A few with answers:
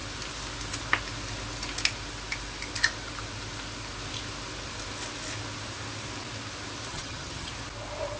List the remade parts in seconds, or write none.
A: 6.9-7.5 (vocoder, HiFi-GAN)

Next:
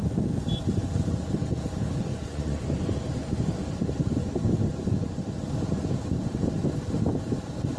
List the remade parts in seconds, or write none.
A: 2.1-2.6 (vocoder, Vocos)

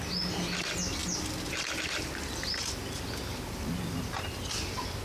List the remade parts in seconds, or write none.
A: none

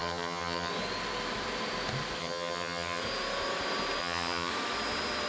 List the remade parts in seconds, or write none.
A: 0.0-0.7 (vocoder, HiFi-GAN); 2.2-3.0; 4.0-4.5

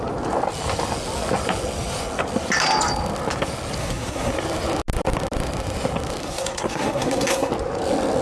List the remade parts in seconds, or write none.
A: 3.8-4.3 (codec, SNAC); 6.2-7.5

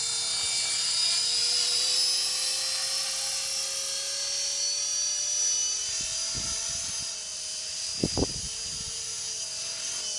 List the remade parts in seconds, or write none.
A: 1.4-2.0 (vocoder, BigVGAN v2); 7.3-9.4

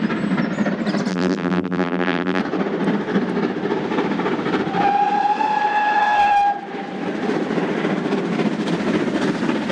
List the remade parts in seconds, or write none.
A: 1.1-2.4 (vocoder, BigVGAN v2)

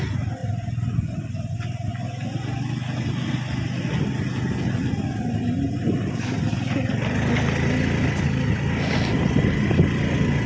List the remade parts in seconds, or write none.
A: none